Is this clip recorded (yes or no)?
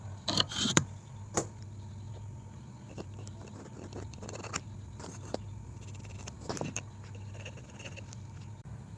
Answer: no